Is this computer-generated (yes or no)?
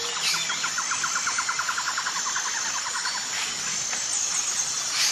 no